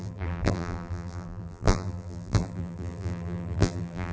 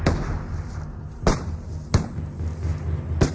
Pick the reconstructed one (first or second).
first